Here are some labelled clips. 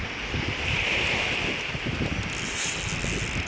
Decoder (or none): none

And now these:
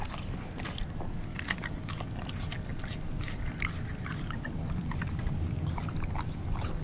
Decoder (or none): vocoder, BigVGAN v2